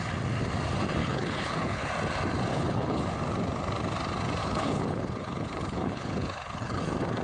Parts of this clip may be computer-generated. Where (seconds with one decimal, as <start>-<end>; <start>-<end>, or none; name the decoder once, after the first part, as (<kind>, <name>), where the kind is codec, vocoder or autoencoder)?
1.0-1.9 (codec, HILCodec); 2.5-3.0; 4.4-6.8